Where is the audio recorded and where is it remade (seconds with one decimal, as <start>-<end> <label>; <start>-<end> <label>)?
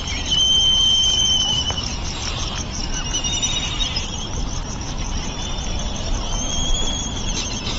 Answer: 0.0-2.8 remade; 2.8-3.6 recorded; 3.6-7.8 remade